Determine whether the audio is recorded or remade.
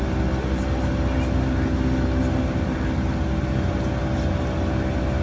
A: recorded